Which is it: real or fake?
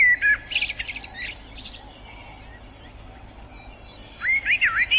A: real